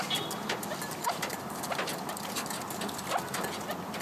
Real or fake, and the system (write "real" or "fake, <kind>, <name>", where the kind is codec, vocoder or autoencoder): real